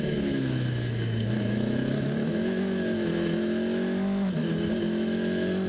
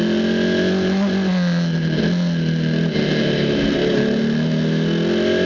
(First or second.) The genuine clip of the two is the second